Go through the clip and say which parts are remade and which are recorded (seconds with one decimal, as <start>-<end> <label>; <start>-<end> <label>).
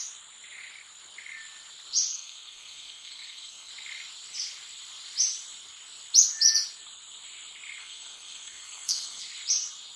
0.0-2.1 recorded; 2.1-3.7 remade; 3.7-7.8 recorded; 7.8-9.2 remade; 9.2-10.0 recorded